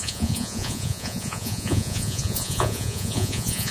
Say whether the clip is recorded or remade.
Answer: remade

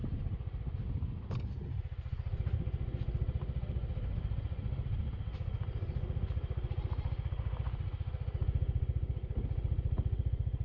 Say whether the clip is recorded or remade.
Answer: recorded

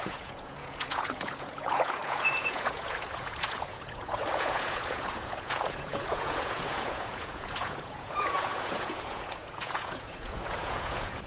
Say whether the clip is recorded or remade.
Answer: remade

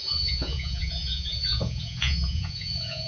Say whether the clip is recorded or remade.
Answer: remade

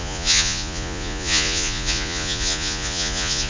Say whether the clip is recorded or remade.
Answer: remade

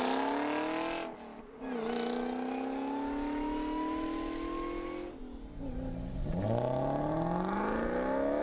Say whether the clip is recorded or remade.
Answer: recorded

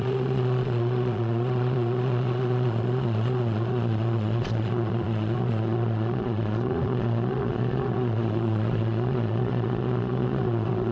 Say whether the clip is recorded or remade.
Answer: remade